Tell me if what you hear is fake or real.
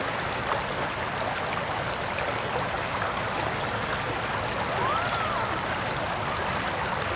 real